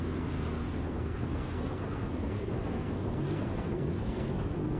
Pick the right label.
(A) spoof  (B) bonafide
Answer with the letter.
A